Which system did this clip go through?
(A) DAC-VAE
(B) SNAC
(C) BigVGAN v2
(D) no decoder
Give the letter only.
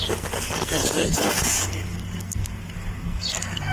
B